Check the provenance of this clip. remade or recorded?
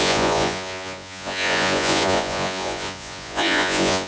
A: remade